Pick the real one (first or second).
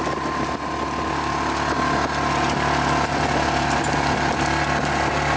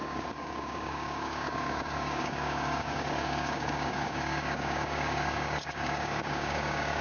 first